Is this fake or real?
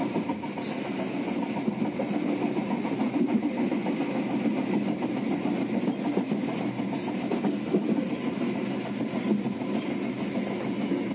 real